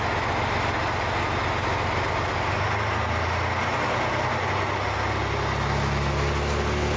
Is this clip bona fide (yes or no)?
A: yes